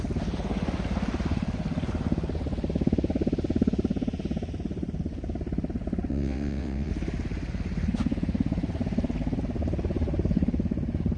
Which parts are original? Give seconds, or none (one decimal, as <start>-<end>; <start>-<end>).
0.0-6.1; 6.9-11.2